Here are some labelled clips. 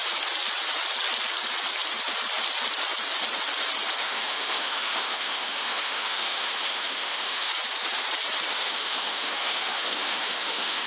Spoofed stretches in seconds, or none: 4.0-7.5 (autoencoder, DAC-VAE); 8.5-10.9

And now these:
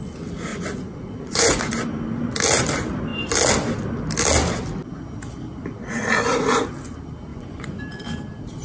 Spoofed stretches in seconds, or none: 0.5-1.6 (vocoder, Vocos); 7.3-7.8